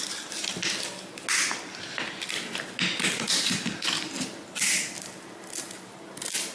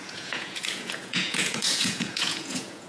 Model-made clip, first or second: second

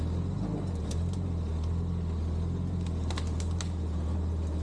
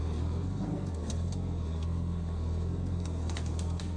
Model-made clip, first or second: second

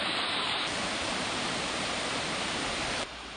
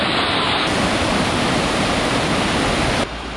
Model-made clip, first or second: first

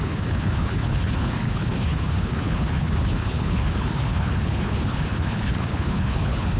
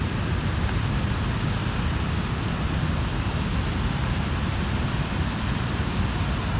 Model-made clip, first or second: first